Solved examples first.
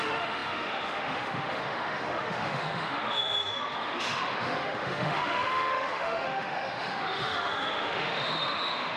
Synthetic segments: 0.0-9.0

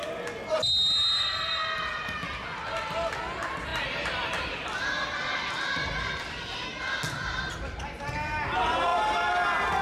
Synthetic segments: none